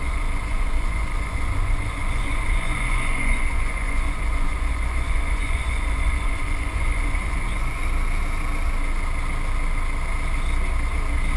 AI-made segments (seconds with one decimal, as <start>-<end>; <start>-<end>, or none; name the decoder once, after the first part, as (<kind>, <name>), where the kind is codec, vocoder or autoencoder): 0.0-7.8 (vocoder, Vocos)